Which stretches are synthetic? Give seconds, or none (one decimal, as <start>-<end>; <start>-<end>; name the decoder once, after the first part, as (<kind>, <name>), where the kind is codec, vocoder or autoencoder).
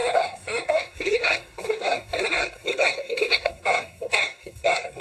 0.0-5.0 (codec, SNAC)